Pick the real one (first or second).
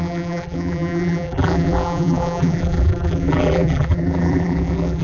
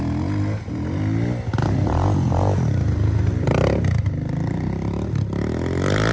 second